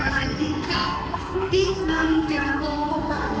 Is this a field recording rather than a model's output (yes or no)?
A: no